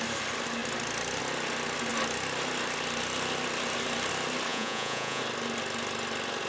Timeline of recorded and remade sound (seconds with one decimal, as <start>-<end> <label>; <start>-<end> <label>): 0.0-4.5 recorded; 4.5-5.2 remade; 5.2-6.5 recorded